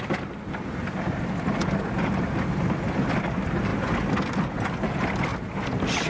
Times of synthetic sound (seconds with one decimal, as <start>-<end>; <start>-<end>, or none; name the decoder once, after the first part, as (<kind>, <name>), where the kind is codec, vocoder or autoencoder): none